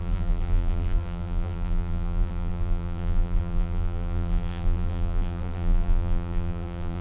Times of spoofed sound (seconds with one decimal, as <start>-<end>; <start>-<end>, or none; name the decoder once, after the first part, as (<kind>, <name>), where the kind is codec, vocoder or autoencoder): 0.0-7.0 (vocoder, BigVGAN v2)